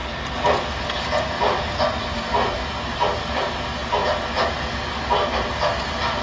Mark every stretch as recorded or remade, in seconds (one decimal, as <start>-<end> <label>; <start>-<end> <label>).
0.0-6.2 recorded